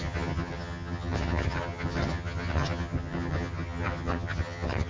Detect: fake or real fake